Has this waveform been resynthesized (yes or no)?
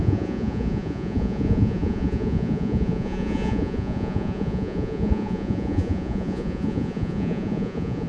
yes